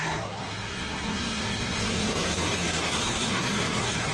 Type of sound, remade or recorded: remade